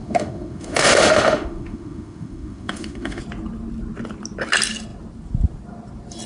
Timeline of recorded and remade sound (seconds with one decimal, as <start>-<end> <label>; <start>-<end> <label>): 0.0-3.2 remade; 3.2-6.3 recorded